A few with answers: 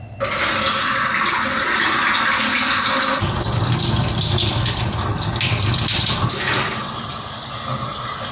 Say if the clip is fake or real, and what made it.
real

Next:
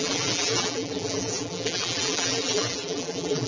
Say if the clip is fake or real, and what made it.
fake, vocoder, BigVGAN v2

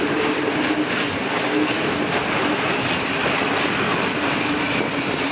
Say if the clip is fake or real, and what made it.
real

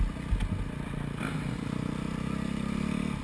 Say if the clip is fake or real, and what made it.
real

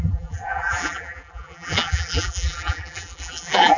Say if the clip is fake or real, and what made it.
fake, vocoder, BigVGAN v2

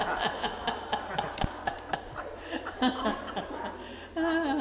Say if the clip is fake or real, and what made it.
real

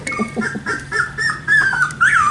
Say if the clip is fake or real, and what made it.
fake, vocoder, BigVGAN v2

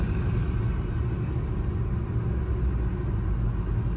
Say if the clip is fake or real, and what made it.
real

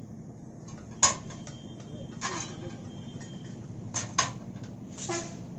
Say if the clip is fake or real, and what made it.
real